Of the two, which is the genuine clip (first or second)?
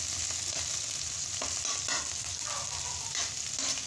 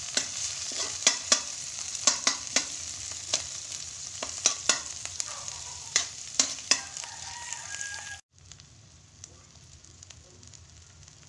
first